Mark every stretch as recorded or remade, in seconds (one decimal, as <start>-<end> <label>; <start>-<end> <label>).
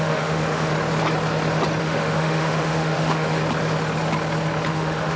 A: 0.0-0.7 remade; 0.7-1.8 recorded; 1.8-3.4 remade; 3.4-4.7 recorded; 4.7-5.2 remade